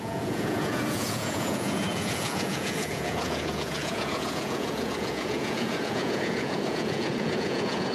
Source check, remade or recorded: remade